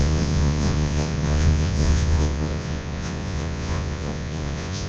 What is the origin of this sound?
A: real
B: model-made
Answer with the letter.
B